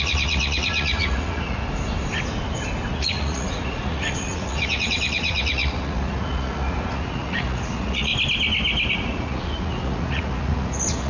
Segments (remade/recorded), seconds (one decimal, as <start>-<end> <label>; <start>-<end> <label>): 0.0-1.6 remade; 1.6-2.9 recorded; 2.9-8.1 remade; 8.1-8.9 recorded; 8.9-11.1 remade